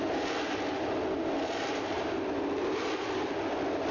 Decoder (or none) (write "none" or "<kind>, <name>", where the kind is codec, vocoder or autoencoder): none